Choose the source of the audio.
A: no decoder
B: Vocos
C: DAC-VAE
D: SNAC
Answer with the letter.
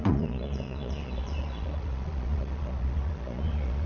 B